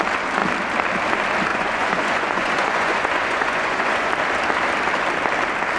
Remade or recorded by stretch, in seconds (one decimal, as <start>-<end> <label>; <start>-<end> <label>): 0.0-1.5 recorded; 1.5-4.1 remade; 4.1-5.8 recorded